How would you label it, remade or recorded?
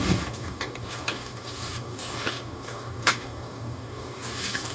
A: remade